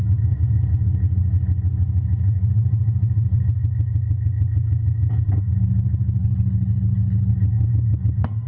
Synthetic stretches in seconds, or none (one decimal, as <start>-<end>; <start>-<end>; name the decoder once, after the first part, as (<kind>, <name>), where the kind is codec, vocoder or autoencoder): 6.2-7.3 (codec, HILCodec)